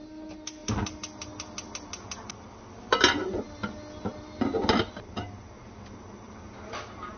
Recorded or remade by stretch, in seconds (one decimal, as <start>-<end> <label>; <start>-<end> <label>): 0.0-7.2 recorded